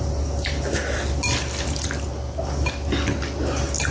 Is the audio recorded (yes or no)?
yes